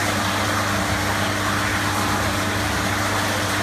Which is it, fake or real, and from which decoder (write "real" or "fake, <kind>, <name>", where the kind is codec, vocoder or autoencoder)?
real